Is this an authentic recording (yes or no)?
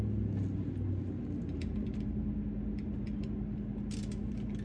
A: yes